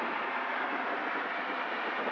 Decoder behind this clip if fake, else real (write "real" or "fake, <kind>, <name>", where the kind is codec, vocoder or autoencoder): real